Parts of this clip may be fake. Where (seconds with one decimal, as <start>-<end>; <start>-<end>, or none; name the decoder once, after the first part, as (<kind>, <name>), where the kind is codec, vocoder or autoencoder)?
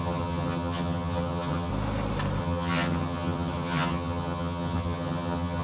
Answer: 0.0-1.7 (vocoder, HiFi-GAN); 2.4-5.6